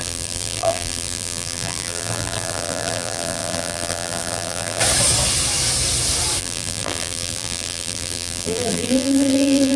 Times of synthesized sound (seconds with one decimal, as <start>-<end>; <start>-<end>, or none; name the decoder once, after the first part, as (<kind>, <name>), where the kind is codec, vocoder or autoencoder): 0.0-4.8 (vocoder, BigVGAN v2); 6.4-9.8